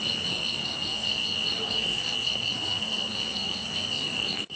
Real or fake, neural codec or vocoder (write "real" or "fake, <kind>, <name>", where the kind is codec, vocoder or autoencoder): fake, codec, SNAC